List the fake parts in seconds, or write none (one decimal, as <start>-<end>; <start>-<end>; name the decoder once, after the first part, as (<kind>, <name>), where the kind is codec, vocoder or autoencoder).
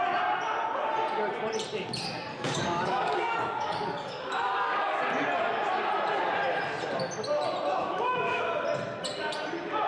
2.3-5.0 (codec, DAC); 7.8-8.4